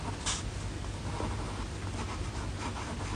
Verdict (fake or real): real